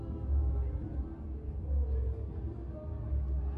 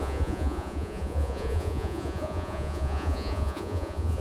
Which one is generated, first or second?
second